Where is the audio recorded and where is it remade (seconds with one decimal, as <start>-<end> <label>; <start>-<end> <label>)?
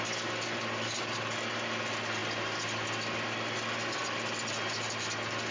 0.0-5.5 recorded